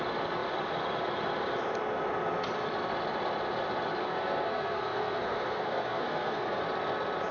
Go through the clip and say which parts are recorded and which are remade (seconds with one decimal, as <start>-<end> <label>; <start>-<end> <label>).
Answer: 0.0-4.0 recorded; 4.0-6.6 remade; 6.6-7.3 recorded